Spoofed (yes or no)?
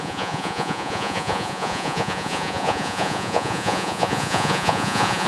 yes